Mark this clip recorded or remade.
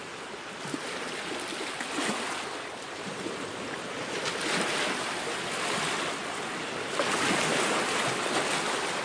recorded